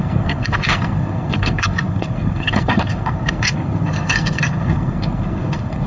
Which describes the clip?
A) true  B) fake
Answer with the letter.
B